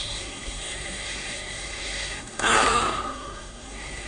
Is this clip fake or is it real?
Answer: fake